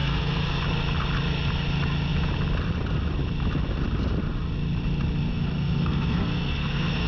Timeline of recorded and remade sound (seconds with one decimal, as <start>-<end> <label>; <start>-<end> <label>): 0.0-0.6 remade; 0.6-5.3 recorded; 5.3-7.1 remade